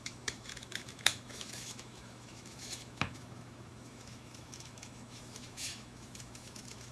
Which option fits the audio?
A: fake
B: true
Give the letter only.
A